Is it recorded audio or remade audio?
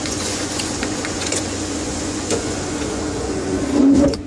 remade